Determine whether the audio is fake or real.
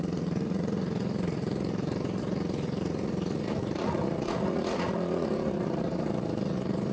fake